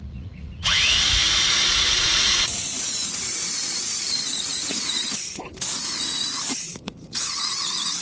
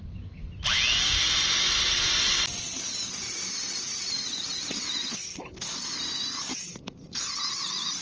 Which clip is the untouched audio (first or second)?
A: second